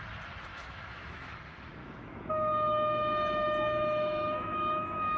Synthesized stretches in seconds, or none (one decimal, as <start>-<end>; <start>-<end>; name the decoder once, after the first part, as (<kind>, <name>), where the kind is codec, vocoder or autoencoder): 0.5-1.3 (autoencoder, DAC-VAE); 1.8-5.2